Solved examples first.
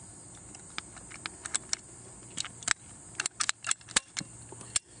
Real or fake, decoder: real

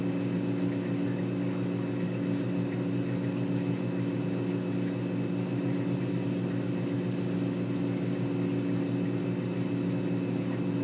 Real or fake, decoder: real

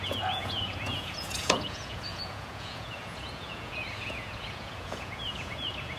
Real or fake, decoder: fake, vocoder, Vocos